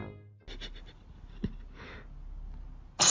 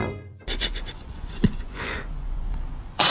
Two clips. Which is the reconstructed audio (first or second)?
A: second